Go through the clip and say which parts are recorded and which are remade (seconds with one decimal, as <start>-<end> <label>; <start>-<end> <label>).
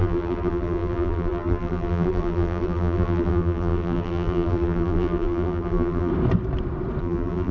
0.0-6.1 remade; 6.1-7.0 recorded; 7.0-7.5 remade